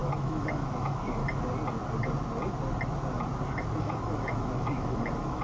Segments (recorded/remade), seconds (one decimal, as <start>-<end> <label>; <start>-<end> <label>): 0.0-1.2 remade; 1.2-3.8 recorded; 3.8-5.4 remade